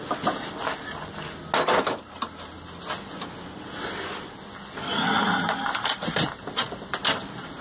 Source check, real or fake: real